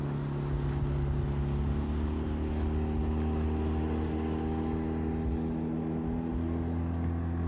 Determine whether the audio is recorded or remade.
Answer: recorded